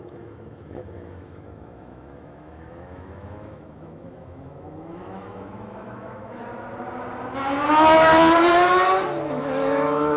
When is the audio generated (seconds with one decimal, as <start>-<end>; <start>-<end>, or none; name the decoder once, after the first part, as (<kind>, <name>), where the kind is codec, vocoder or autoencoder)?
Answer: 0.0-6.4 (autoencoder, DAC-VAE); 7.7-8.1; 9.3-10.2